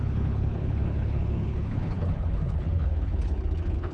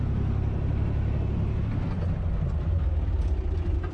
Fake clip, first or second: first